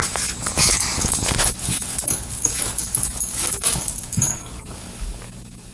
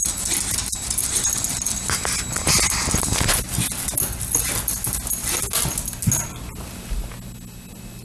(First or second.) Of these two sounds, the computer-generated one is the first